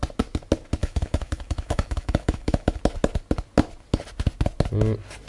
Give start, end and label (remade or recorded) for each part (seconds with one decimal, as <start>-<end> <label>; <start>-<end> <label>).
0.0-0.8 recorded; 0.8-2.8 remade; 2.8-5.3 recorded